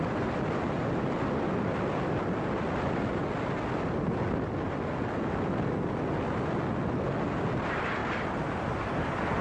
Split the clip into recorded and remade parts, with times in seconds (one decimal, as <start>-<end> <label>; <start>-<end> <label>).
0.0-9.4 recorded